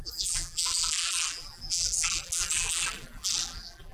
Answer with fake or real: fake